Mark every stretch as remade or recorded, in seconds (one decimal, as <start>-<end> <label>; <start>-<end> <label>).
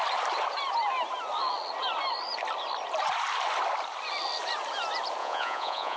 0.0-5.2 recorded; 5.2-6.0 remade